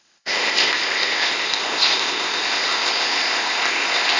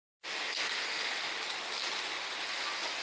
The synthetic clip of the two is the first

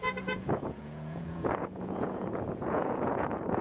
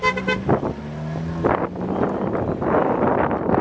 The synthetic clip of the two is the first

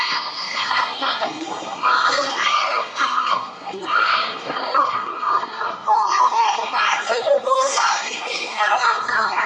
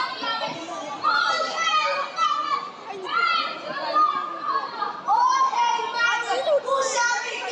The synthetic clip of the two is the first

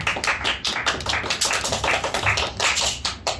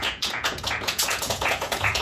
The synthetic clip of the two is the second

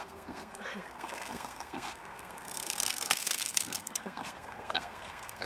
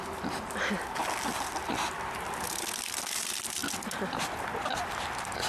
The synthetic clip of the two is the first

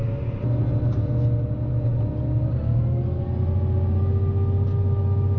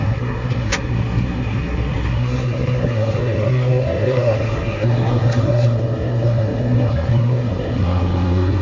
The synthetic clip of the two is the second